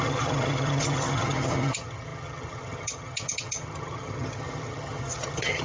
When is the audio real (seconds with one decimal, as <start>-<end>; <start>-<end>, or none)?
none

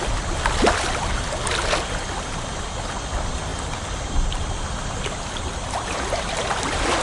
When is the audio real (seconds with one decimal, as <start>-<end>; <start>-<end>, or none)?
0.0-7.0

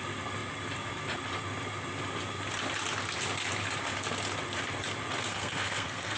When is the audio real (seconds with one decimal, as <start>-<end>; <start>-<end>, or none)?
0.0-5.3

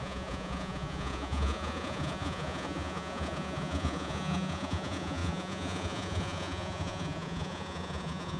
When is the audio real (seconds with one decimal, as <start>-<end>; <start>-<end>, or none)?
none

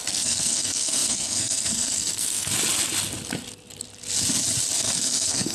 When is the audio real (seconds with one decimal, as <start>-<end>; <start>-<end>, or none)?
2.5-4.8

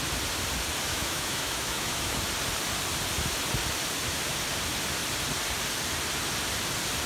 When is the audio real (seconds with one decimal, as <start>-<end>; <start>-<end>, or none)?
0.0-0.9; 2.2-7.1

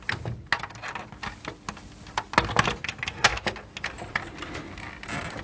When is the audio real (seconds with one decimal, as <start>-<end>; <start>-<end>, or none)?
0.0-5.4